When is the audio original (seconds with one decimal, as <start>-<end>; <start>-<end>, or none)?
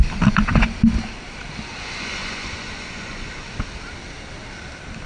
0.0-1.7; 3.3-5.1